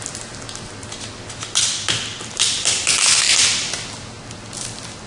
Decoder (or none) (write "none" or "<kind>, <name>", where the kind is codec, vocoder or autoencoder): none